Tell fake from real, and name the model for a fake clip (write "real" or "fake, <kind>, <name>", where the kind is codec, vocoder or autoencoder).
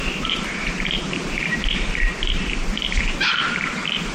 fake, vocoder, BigVGAN v2